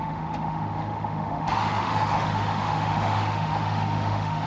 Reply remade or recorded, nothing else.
remade